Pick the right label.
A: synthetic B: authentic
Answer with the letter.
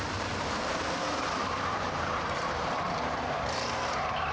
A